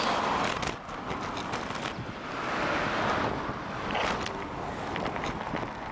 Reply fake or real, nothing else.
real